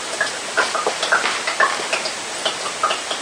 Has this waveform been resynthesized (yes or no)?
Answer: no